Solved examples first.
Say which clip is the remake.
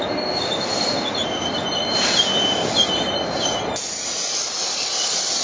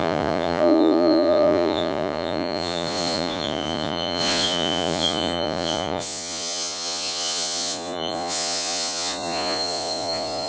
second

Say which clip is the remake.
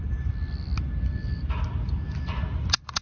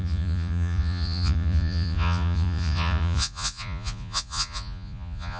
second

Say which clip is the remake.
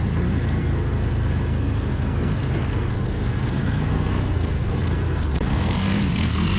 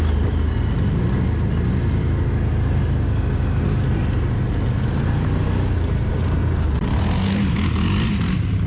first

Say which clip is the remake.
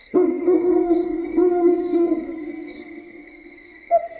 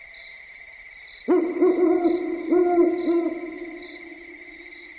first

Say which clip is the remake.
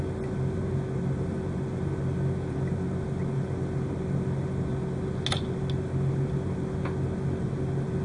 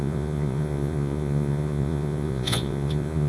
second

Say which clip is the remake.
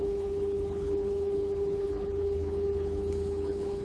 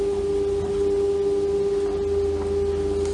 first